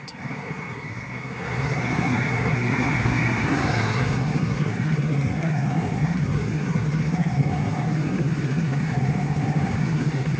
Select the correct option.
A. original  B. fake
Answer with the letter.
B